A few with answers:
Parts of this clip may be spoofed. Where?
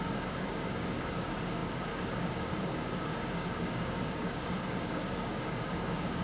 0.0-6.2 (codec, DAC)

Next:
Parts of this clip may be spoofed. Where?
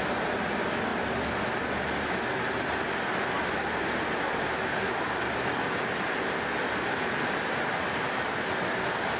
none